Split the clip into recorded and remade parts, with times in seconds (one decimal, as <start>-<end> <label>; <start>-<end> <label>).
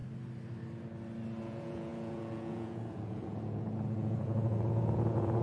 0.0-1.4 recorded; 1.4-5.4 remade